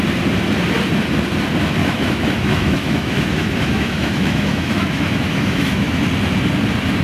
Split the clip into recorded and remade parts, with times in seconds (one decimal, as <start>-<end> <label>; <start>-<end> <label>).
0.0-1.8 recorded; 1.8-6.0 remade; 6.0-7.0 recorded